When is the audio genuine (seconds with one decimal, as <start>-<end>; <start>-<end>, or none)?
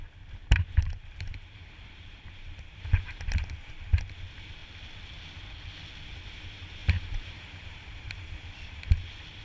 0.0-0.4; 4.0-6.8; 8.8-9.4